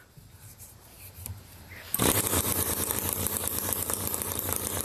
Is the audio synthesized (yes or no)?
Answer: yes